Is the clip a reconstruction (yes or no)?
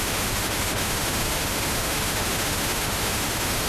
yes